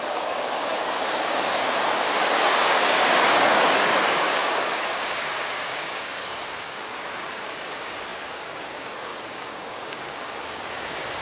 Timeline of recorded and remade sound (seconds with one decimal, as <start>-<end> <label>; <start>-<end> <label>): 0.0-11.2 remade